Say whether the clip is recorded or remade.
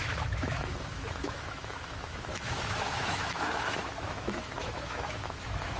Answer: remade